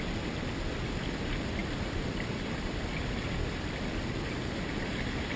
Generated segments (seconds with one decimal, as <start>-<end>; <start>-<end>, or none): 1.6-4.0